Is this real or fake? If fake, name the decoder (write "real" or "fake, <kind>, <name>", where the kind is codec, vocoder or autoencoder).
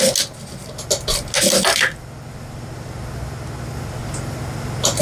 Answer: real